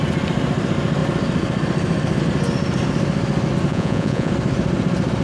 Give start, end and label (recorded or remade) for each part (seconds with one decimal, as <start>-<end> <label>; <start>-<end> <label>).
0.0-3.7 recorded; 3.7-4.3 remade; 4.3-5.2 recorded